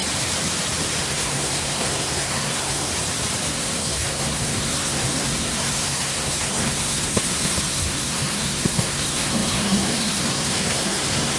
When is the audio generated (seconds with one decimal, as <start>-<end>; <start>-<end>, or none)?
1.0-2.9; 3.5-11.4

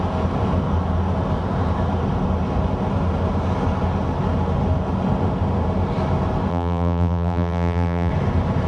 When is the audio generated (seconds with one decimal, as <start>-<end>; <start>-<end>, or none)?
6.5-8.1

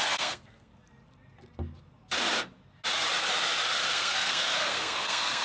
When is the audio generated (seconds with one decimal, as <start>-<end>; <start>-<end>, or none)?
0.0-0.7; 3.9-5.4

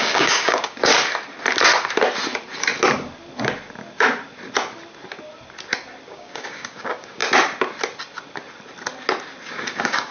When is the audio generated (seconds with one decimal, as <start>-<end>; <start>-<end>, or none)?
0.0-0.9; 6.1-7.2; 9.5-10.1

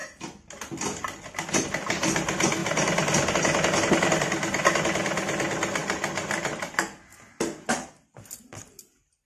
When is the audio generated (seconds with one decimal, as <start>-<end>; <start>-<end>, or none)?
5.8-6.6